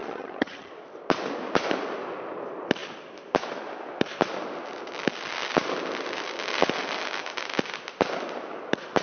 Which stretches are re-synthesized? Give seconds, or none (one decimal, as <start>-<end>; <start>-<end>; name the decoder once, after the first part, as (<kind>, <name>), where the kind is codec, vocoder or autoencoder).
0.0-0.7 (vocoder, HiFi-GAN)